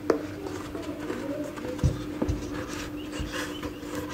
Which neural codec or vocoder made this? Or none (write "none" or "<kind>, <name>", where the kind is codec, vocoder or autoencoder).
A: none